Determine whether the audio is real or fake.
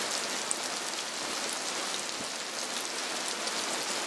real